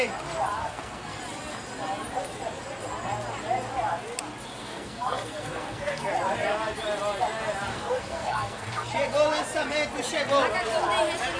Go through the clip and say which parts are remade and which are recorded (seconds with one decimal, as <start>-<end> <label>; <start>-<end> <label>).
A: 0.0-0.6 recorded; 0.6-1.2 remade; 1.2-4.6 recorded; 4.6-6.1 remade; 6.1-7.7 recorded; 7.7-8.9 remade; 8.9-11.4 recorded